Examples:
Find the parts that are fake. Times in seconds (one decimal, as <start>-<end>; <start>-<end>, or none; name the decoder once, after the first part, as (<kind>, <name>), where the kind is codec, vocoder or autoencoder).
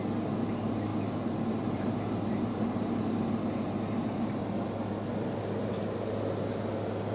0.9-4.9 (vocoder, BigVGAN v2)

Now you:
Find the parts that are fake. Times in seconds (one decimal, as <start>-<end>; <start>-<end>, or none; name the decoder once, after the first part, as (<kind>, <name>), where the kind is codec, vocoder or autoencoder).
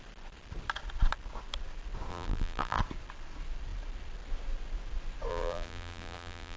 2.1-2.8 (vocoder, BigVGAN v2); 5.3-6.6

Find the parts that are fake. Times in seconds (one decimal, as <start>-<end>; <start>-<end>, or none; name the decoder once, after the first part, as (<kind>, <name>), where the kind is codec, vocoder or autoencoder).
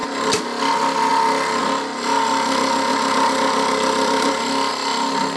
2.9-4.7 (vocoder, BigVGAN v2)